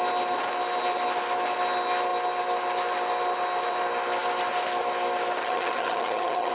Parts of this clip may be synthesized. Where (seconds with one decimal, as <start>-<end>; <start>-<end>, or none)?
5.4-6.5